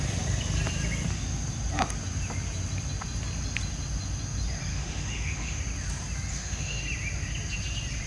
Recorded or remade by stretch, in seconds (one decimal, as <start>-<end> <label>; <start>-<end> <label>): 0.0-4.7 recorded; 4.7-5.6 remade; 5.6-6.3 recorded; 6.3-6.8 remade; 6.8-8.1 recorded